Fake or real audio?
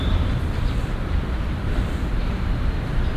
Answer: fake